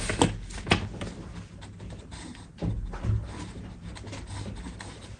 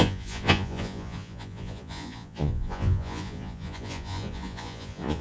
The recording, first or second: first